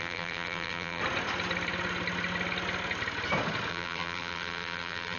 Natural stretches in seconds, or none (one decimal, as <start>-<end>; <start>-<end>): 1.0-3.7